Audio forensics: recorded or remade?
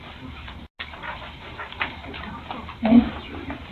recorded